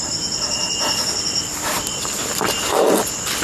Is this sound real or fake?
real